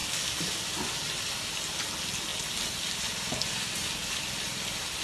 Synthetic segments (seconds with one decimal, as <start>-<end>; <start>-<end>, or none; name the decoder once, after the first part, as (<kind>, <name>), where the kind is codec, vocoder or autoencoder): none